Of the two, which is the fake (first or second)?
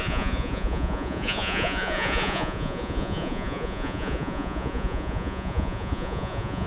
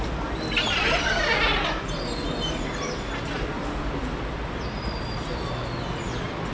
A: first